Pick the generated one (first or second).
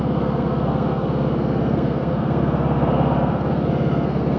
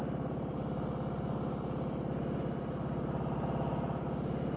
first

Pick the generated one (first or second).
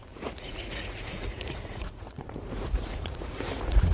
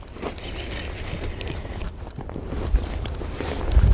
first